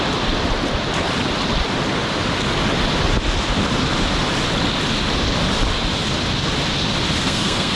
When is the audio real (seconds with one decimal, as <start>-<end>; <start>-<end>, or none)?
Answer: 0.0-7.2